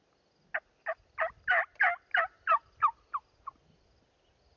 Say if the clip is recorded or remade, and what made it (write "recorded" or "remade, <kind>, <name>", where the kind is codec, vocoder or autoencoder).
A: recorded